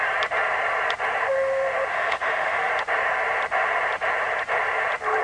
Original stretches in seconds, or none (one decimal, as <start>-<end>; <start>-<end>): 0.0-1.9; 2.7-5.2